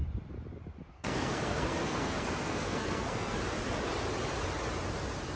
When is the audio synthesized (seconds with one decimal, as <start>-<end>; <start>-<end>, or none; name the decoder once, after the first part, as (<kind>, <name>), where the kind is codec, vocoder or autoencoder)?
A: 0.9-3.4 (codec, SNAC)